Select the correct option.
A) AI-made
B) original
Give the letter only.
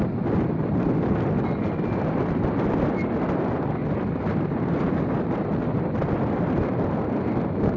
B